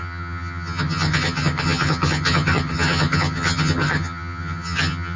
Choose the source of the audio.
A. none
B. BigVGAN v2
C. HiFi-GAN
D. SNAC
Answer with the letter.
C